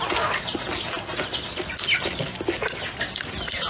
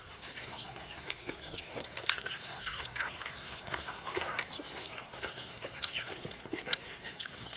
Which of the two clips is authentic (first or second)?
first